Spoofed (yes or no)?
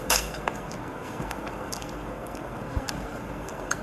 yes